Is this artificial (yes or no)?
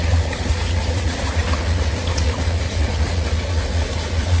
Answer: yes